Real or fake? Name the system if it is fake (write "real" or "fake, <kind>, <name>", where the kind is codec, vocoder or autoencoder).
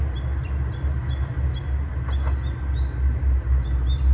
real